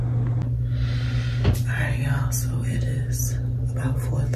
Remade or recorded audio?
recorded